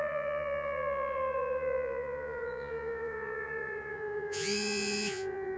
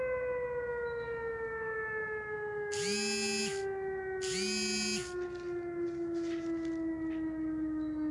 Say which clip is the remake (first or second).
first